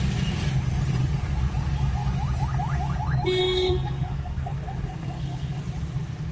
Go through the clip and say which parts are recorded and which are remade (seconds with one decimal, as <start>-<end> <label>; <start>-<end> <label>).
0.0-3.4 recorded; 3.4-5.6 remade; 5.6-6.3 recorded